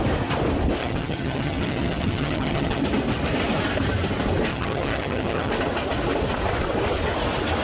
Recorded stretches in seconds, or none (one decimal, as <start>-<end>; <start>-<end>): 0.0-0.8; 2.8-4.5; 5.5-7.6